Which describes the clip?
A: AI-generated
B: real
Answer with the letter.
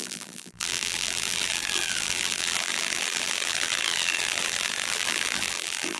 A